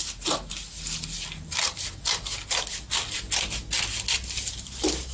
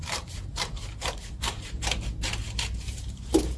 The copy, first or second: second